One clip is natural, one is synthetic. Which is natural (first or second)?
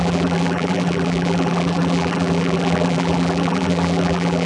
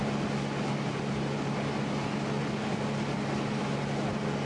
second